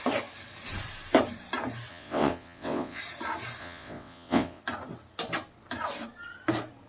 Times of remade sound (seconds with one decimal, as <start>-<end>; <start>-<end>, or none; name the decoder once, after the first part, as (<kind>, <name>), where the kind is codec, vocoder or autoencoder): 1.9-3.0 (vocoder, WaveNeXt); 3.6-4.6